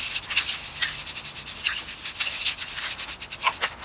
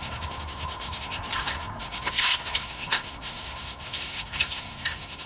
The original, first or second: first